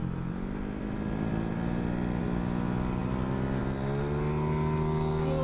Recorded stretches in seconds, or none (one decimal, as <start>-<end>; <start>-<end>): 0.0-5.4